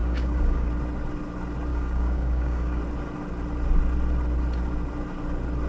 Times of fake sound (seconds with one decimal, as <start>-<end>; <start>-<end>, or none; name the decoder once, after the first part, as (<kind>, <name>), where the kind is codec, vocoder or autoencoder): 0.0-0.7 (codec, DAC); 1.7-2.8